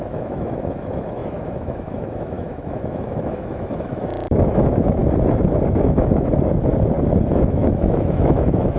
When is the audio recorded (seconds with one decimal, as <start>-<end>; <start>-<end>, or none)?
5.0-5.7; 6.7-7.3